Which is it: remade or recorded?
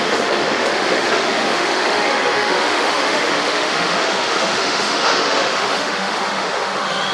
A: remade